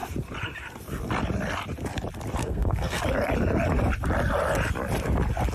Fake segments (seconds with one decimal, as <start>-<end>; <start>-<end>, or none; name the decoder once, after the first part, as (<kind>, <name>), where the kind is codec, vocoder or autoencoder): 2.4-3.0 (codec, SNAC)